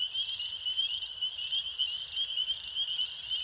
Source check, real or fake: real